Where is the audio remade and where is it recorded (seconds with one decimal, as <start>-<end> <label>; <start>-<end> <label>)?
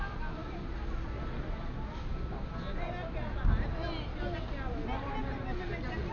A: 0.0-6.1 recorded